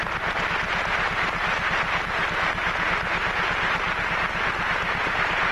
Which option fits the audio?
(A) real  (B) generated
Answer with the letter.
A